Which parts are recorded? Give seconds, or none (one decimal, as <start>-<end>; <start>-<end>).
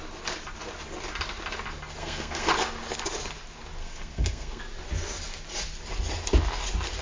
0.0-2.0; 2.5-3.8; 4.6-7.0